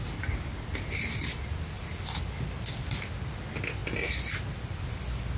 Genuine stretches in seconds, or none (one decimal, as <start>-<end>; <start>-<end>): 0.0-5.4